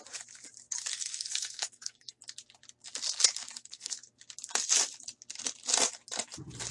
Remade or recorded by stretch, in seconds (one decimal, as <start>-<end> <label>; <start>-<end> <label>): 0.0-0.9 recorded; 0.9-2.2 remade; 2.2-3.6 recorded; 3.6-4.1 remade; 4.1-6.7 recorded

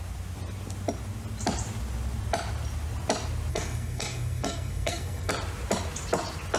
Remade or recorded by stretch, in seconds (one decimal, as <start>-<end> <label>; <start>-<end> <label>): 0.0-3.5 recorded; 3.5-5.3 remade; 5.3-6.6 recorded

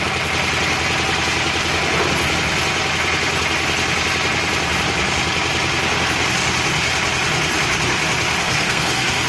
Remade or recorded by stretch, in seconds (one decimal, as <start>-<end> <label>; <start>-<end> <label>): 0.0-8.4 recorded; 8.4-9.3 remade

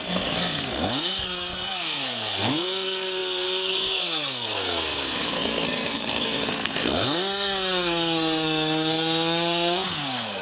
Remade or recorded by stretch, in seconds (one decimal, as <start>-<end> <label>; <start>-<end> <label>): 0.0-10.4 remade

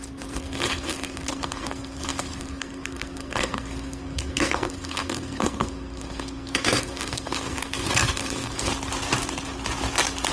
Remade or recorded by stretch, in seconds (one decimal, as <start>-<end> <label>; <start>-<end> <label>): 0.0-8.7 remade; 8.7-10.3 recorded

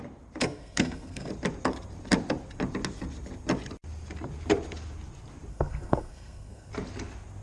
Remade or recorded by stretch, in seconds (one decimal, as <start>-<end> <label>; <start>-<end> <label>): 0.0-0.4 recorded; 0.4-1.3 remade; 1.3-5.5 recorded; 5.5-6.7 remade; 6.7-7.4 recorded